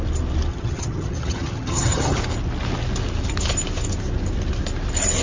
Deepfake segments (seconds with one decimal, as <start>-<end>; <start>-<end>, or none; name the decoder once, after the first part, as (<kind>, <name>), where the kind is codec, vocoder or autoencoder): 0.5-2.2 (vocoder, HiFi-GAN)